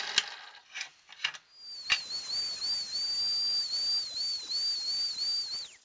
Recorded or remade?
recorded